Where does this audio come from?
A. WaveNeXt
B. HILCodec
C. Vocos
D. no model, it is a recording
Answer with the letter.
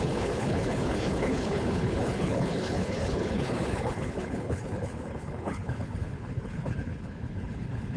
B